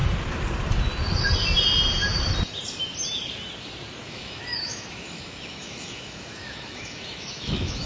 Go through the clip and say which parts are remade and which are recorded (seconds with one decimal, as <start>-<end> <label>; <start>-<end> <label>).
0.0-4.0 recorded; 4.0-7.9 remade